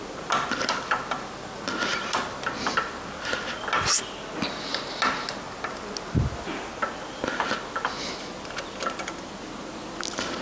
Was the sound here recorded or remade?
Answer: recorded